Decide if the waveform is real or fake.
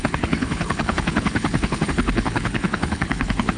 fake